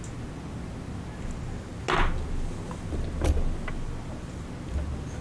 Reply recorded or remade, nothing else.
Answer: recorded